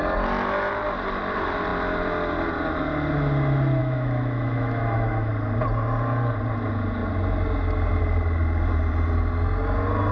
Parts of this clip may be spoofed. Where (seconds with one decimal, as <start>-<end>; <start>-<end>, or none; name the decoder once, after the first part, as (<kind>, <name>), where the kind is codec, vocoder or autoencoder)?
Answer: 3.8-5.3 (autoencoder, DAC-VAE)